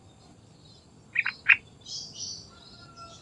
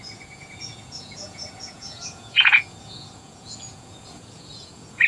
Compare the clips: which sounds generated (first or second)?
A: second